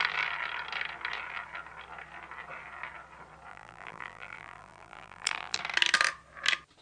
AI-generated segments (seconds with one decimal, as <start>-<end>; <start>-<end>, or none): 3.5-5.6